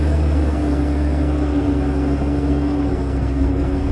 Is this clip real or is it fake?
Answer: fake